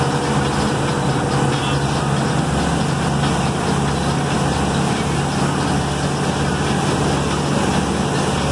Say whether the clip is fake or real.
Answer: real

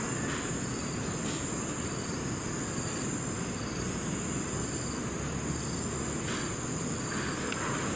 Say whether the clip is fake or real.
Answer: real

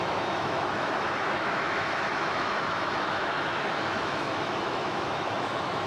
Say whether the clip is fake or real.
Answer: fake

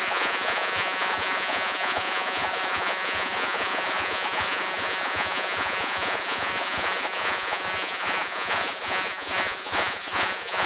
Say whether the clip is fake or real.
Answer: fake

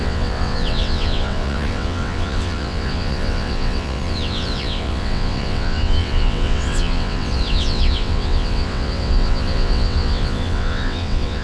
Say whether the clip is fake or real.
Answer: fake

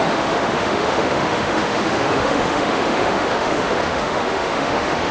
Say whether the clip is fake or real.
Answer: fake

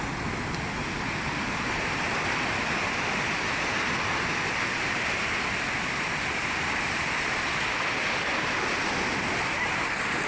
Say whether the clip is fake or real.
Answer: real